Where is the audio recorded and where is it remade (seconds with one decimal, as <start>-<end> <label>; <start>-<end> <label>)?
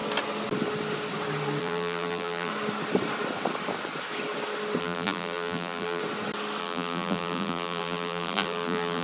0.0-1.6 recorded; 1.6-2.5 remade; 2.5-4.8 recorded; 4.8-6.0 remade; 6.0-6.6 recorded; 6.6-9.0 remade